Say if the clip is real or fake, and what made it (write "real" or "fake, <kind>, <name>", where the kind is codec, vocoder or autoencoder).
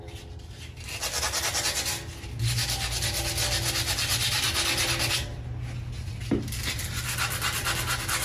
real